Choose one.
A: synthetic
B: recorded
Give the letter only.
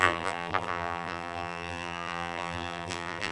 A